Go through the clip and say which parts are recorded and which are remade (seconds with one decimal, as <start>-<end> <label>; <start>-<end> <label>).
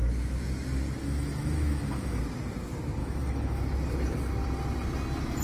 0.0-1.0 recorded; 1.0-2.2 remade; 2.2-3.0 recorded; 3.0-3.6 remade; 3.6-5.4 recorded